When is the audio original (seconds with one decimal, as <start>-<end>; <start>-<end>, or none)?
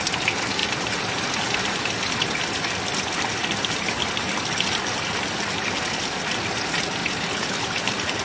0.0-0.6; 1.8-7.0